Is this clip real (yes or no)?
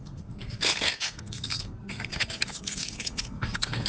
no